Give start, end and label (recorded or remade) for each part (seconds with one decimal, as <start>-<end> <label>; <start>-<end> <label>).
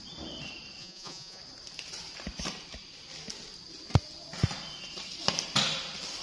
0.0-0.8 recorded; 0.8-1.4 remade; 1.4-6.2 recorded